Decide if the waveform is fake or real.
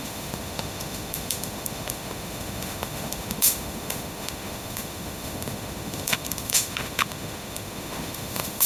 fake